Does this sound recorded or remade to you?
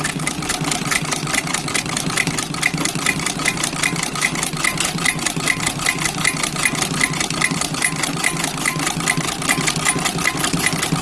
recorded